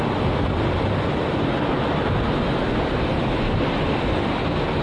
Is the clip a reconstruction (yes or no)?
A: no